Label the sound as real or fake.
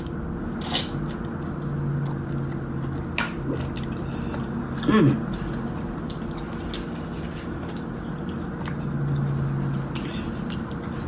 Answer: real